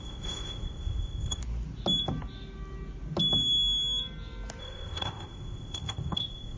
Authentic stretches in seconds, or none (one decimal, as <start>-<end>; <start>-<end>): 1.4-4.6